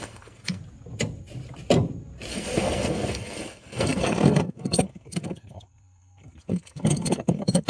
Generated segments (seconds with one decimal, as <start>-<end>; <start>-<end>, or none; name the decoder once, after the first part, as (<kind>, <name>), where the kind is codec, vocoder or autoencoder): 0.0-0.6 (codec, SNAC); 2.3-7.7